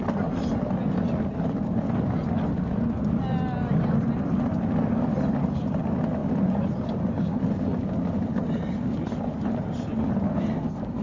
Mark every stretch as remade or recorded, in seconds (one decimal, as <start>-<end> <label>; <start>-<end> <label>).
0.0-6.2 recorded; 6.2-7.0 remade; 7.0-11.0 recorded